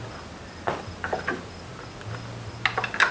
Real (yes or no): yes